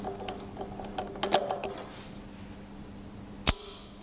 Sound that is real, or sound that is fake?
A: real